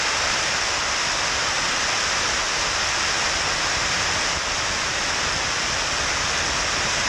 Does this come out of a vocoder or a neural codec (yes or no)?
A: no